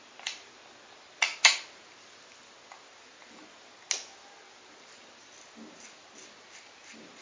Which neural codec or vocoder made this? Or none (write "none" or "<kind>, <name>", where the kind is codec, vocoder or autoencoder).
none